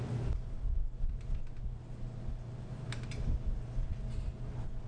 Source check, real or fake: real